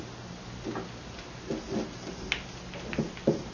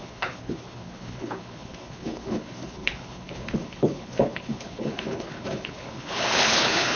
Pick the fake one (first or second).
second